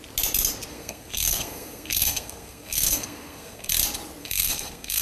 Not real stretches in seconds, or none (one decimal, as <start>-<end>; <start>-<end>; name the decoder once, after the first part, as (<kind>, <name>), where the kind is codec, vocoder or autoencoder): 0.7-3.7 (codec, SNAC); 4.2-5.0